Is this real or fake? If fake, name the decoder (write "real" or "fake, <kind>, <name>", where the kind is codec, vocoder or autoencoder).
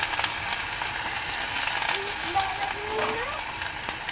real